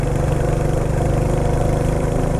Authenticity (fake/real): fake